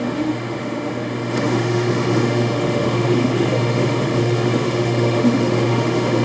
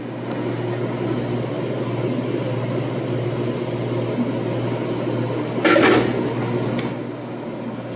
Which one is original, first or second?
second